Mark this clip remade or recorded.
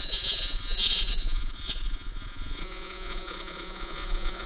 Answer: remade